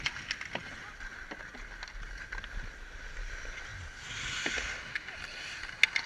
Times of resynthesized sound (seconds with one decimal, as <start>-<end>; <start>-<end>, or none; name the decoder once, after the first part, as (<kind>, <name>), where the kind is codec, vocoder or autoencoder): none